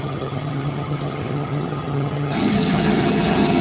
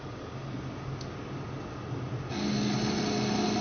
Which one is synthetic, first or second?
first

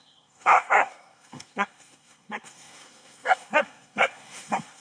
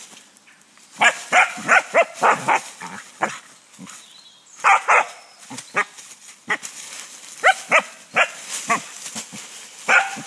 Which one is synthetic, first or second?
first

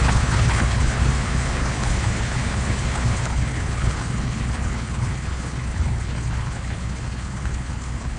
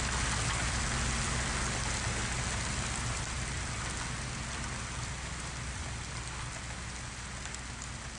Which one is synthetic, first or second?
first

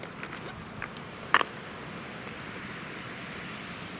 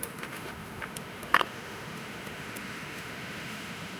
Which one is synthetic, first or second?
second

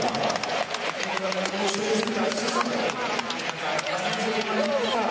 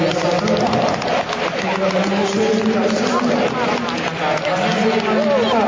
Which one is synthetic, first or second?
first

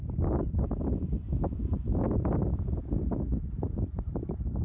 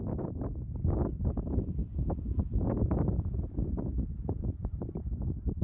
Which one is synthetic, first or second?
second